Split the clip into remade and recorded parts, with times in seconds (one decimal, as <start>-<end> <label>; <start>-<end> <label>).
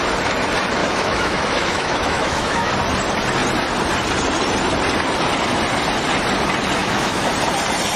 0.0-0.8 recorded; 0.8-2.7 remade; 2.7-6.8 recorded; 6.8-7.3 remade; 7.3-8.0 recorded